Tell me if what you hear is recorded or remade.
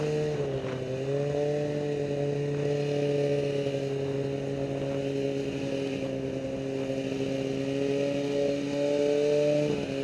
recorded